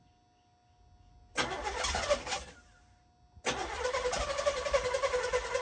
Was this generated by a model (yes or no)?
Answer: no